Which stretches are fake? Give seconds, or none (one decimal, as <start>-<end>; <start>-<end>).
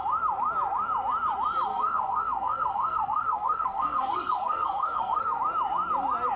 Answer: 1.7-5.4